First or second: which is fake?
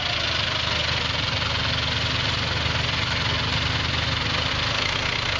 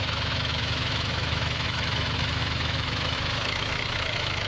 second